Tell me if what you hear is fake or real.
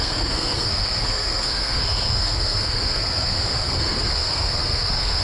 fake